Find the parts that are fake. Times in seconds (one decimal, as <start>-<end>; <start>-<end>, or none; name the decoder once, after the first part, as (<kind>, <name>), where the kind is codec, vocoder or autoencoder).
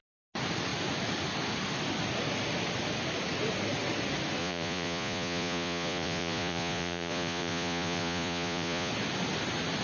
4.4-8.9 (vocoder, Vocos)